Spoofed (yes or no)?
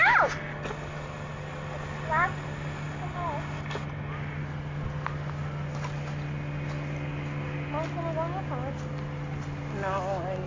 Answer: no